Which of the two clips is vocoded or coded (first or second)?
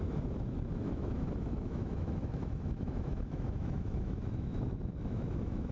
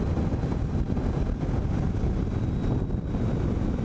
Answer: first